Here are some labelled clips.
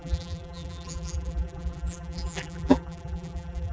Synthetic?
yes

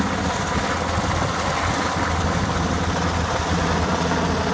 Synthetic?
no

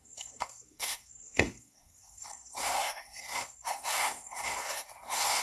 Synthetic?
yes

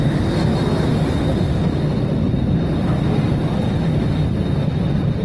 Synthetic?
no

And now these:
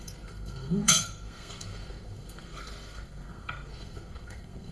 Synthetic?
yes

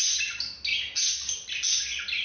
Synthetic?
no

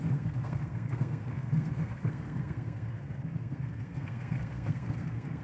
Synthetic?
yes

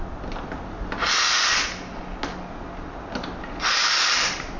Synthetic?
no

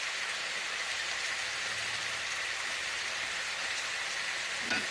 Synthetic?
no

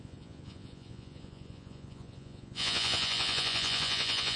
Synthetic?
yes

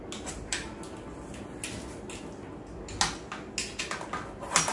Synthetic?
no